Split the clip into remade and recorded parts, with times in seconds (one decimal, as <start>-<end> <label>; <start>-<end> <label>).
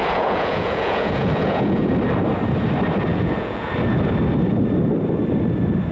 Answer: 0.0-1.9 remade; 1.9-3.1 recorded; 3.1-3.7 remade; 3.7-5.9 recorded